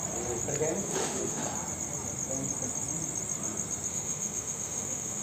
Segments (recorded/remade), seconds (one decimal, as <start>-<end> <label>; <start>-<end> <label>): 0.0-0.8 recorded; 0.8-1.4 remade; 1.4-3.9 recorded; 3.9-5.2 remade